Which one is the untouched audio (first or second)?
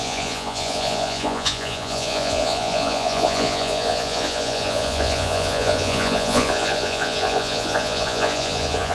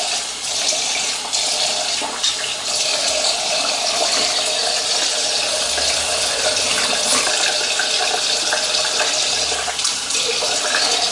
second